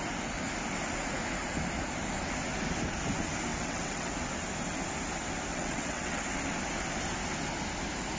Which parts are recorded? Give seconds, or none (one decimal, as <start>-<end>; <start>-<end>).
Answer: 0.0-3.5; 4.1-5.5; 6.2-8.2